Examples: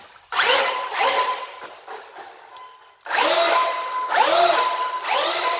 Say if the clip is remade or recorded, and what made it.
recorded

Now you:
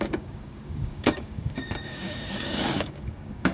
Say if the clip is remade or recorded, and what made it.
remade, codec, DAC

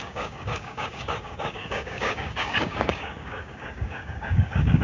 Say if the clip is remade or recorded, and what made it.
remade, codec, DAC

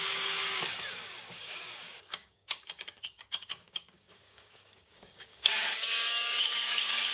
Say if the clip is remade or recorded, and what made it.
remade, codec, DAC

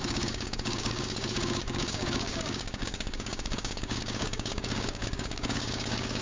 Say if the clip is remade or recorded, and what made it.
remade, codec, DAC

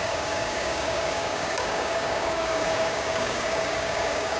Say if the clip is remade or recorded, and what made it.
remade, codec, DAC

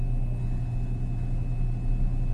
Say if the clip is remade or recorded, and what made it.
recorded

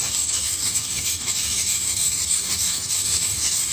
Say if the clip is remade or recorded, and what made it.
remade, codec, DAC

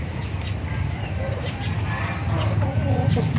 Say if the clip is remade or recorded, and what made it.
recorded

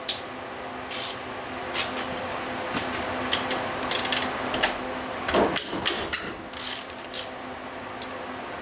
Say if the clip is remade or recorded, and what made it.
recorded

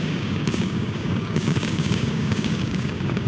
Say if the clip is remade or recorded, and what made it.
remade, codec, DAC